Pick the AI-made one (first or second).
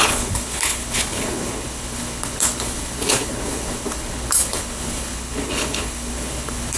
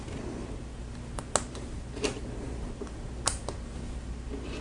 first